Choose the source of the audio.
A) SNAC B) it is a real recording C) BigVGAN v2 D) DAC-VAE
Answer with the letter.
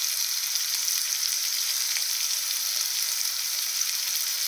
B